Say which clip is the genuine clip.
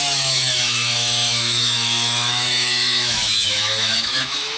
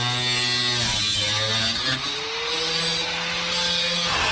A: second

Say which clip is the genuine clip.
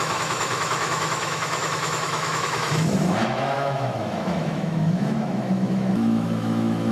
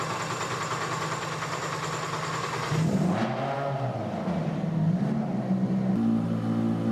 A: second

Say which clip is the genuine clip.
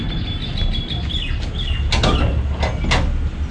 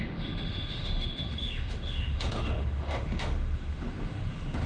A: first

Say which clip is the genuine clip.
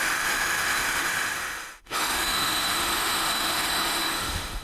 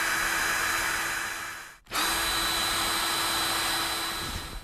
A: second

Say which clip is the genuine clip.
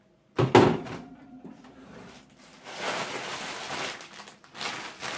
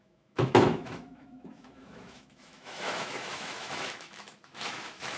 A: first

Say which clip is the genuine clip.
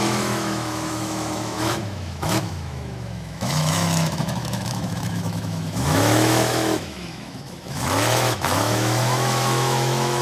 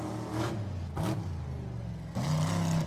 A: second